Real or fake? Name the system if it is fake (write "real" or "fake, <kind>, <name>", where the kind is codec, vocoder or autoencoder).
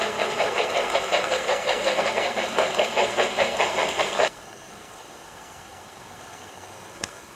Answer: fake, codec, SNAC